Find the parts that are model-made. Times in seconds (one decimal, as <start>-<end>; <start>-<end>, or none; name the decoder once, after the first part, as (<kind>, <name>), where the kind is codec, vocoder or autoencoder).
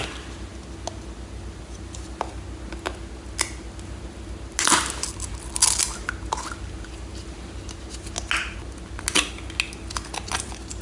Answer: none